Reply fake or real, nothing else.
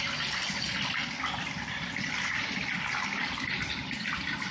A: real